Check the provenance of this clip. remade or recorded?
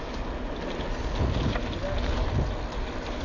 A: recorded